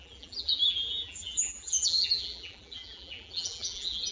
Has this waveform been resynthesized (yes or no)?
yes